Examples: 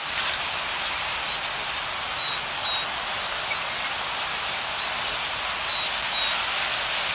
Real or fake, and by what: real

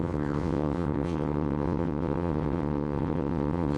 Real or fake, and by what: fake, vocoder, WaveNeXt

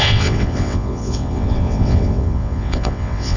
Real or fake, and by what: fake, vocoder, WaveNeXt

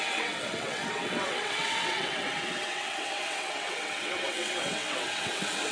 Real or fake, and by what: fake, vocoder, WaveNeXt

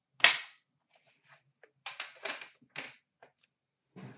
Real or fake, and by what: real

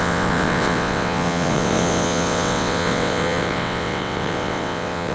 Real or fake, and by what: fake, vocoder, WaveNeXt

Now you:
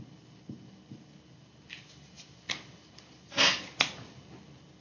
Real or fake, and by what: real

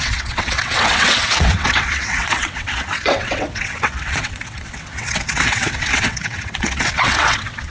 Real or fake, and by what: fake, vocoder, WaveNeXt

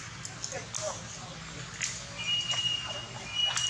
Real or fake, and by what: real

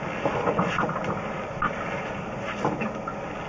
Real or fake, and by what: real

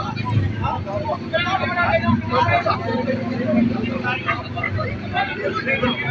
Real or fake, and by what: real